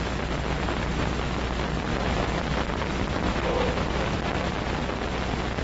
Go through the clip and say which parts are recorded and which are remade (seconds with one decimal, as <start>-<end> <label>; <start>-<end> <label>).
0.0-0.6 recorded; 0.6-1.2 remade; 1.2-1.9 recorded; 1.9-4.5 remade; 4.5-5.6 recorded